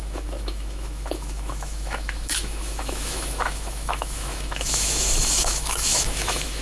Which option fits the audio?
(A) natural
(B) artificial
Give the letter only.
B